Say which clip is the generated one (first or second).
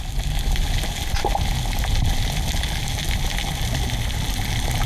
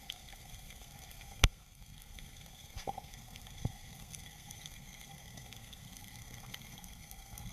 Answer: second